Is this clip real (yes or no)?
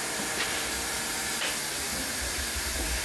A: no